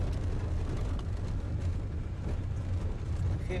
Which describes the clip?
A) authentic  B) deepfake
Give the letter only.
A